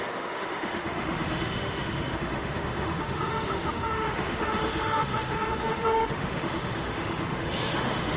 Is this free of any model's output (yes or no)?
no